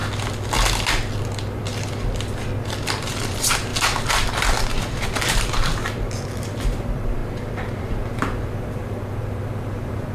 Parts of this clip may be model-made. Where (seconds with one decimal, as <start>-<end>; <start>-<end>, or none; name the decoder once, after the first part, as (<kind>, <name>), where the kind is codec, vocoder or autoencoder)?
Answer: 1.6-10.1 (vocoder, BigVGAN v2)